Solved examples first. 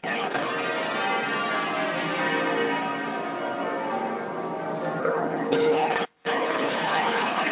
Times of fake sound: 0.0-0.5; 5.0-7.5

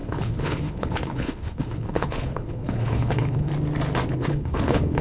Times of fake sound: 0.0-3.5; 4.1-5.0

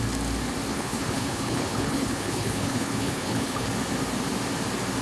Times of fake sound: 0.7-3.7

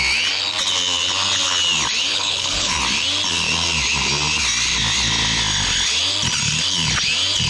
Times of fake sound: 2.1-2.7

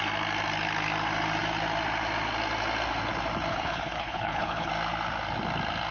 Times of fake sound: 3.5-4.7

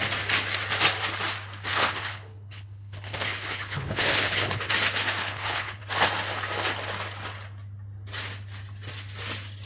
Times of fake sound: 1.7-4.7; 5.2-5.8